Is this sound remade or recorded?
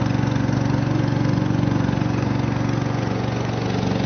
remade